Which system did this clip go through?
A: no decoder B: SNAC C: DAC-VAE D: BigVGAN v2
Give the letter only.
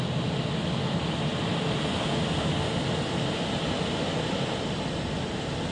A